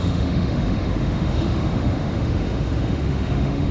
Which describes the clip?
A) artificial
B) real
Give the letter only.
A